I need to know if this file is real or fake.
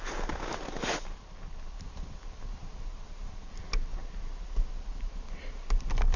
real